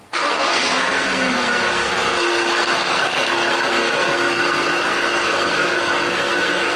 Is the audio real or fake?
fake